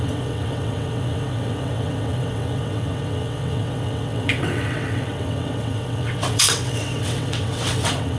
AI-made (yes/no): yes